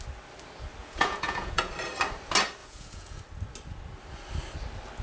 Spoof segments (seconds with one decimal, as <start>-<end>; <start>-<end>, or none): 0.8-1.7; 2.6-3.2